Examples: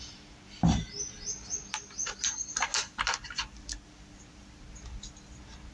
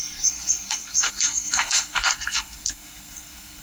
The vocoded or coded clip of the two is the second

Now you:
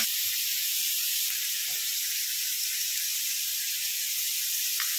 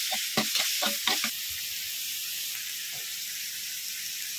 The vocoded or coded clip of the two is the first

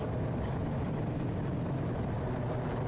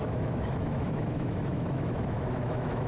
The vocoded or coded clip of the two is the second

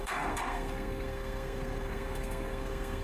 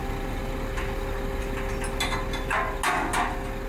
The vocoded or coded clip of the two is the first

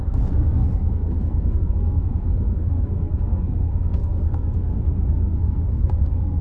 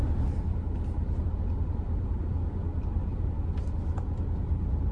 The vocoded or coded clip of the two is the first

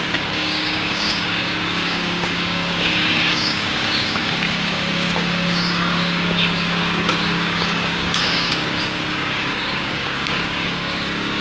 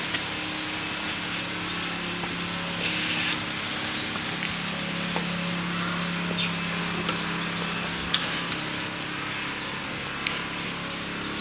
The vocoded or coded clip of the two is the first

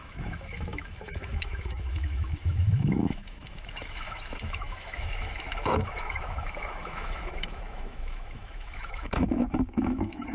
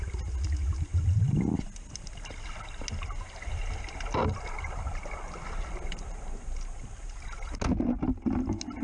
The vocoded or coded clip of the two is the first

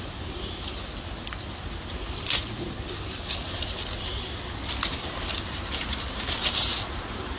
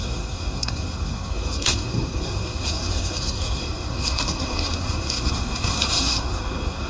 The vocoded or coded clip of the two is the second